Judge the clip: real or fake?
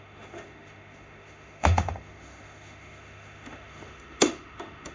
fake